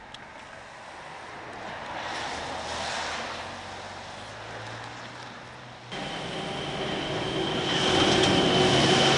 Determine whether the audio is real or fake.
real